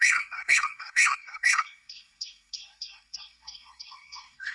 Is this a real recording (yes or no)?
no